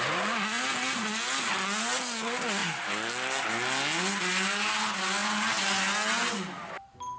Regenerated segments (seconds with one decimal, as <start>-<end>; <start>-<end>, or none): none